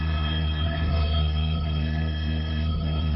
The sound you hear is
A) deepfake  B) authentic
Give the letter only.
A